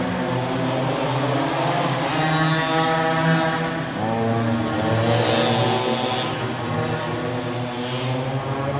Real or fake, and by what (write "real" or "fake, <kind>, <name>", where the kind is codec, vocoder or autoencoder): real